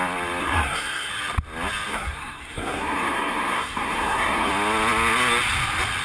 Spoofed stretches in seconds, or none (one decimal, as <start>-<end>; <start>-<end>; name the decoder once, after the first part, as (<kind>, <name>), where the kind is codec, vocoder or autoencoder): 0.4-1.1 (codec, SNAC); 1.9-4.5